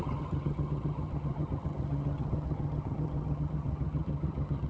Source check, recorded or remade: remade